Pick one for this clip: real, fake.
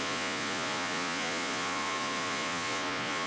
fake